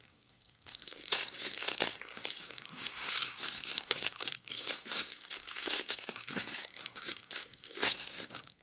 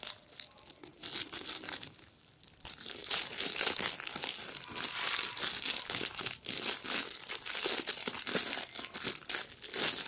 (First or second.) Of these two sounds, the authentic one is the second